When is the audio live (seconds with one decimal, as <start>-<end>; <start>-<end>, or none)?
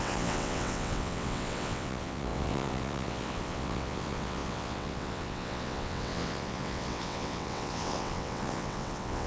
none